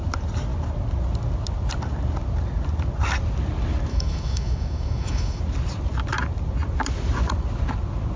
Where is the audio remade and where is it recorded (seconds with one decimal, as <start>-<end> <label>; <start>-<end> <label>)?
0.0-3.9 recorded; 3.9-5.4 remade; 5.4-8.2 recorded